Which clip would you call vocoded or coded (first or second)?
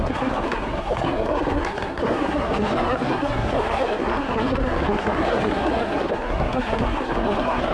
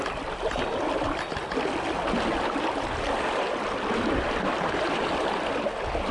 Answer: first